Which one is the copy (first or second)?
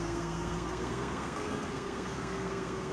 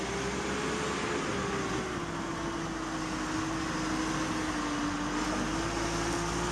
first